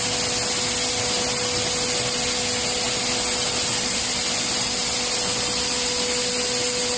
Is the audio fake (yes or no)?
no